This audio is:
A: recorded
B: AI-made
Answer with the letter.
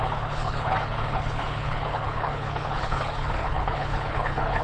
B